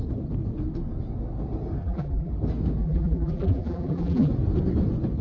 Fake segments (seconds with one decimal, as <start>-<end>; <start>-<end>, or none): 1.8-2.3; 2.8-4.3